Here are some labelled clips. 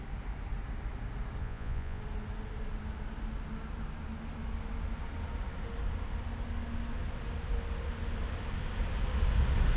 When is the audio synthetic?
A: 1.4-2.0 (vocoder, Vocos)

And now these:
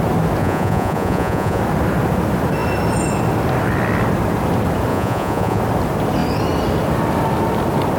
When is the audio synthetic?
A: 0.4-1.6 (vocoder, Vocos); 4.9-5.6

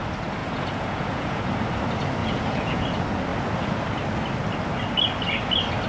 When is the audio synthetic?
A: 0.4-1.4 (vocoder, Vocos); 2.2-2.8

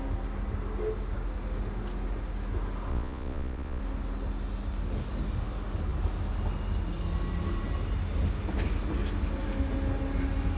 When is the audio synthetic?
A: 2.9-3.8 (vocoder, Vocos)

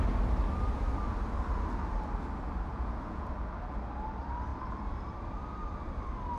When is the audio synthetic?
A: 2.7-3.3 (vocoder, Vocos)